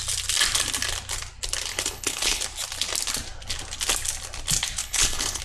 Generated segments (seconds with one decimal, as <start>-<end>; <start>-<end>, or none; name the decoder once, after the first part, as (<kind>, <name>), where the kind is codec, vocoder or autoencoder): 1.7-2.4 (codec, HILCodec); 4.8-5.4